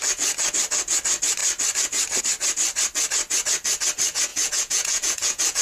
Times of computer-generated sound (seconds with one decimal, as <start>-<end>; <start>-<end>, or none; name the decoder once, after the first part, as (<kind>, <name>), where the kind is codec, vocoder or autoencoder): 4.3-5.6 (vocoder, Vocos)